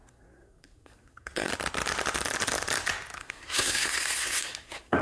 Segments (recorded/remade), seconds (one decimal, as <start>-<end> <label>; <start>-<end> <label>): 0.0-1.5 remade; 1.5-3.2 recorded; 3.2-5.0 remade